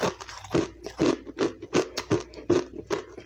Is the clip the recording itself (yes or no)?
yes